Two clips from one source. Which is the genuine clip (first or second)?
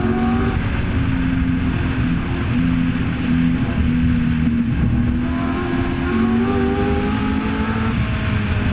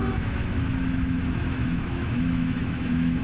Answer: first